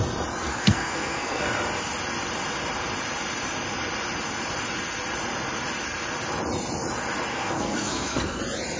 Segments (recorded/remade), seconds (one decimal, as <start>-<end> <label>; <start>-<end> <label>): 0.0-0.5 recorded; 0.5-1.4 remade; 1.4-7.3 recorded; 7.3-8.4 remade; 8.4-8.8 recorded